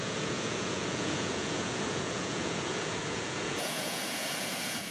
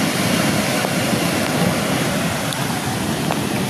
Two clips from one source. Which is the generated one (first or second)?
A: first